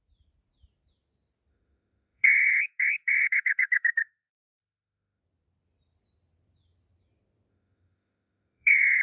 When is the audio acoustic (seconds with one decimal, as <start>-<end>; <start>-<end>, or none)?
0.0-1.5; 5.2-7.5